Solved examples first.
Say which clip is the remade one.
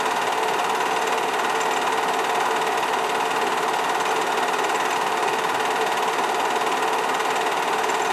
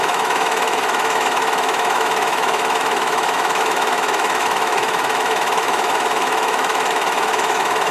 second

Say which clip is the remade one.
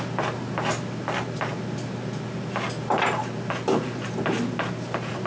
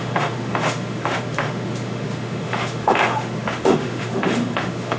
second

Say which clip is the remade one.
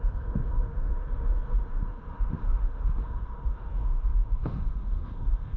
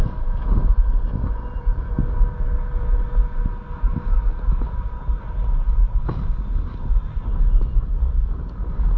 first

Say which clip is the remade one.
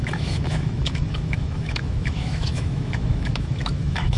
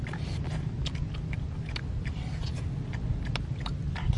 first